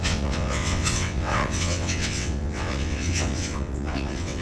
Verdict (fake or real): fake